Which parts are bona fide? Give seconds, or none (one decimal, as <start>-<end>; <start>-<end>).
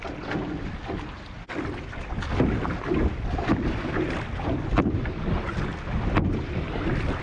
0.0-7.2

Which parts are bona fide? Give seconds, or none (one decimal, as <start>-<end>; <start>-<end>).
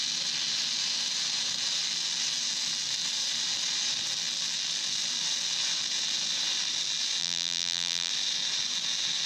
0.0-7.2; 8.1-9.3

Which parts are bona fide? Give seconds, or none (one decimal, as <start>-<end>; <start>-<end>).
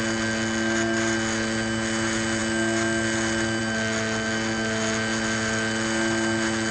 0.0-6.7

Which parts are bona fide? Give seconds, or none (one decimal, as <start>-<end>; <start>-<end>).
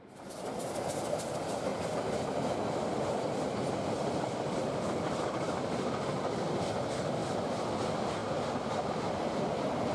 0.0-1.7; 3.6-7.2; 7.7-9.9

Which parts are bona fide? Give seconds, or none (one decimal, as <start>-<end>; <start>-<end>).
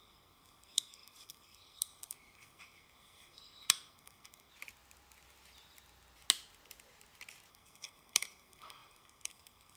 4.5-7.5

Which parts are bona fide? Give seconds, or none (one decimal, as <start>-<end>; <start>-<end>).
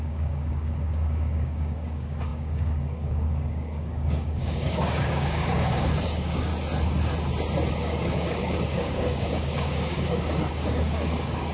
6.5-7.7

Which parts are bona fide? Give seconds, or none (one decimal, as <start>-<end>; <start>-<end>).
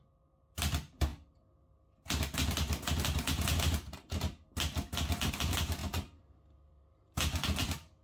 1.1-5.3; 5.8-6.7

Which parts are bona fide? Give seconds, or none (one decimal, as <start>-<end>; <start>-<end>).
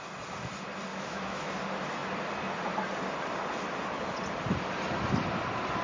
0.0-0.9; 1.5-5.8